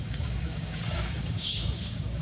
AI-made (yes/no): yes